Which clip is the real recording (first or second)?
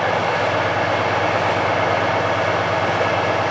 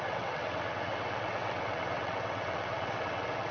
first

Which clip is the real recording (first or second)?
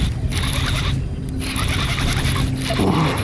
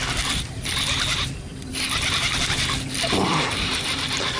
first